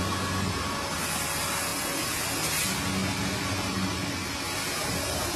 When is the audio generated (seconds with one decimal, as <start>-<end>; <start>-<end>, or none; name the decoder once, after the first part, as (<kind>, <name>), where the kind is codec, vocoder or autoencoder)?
none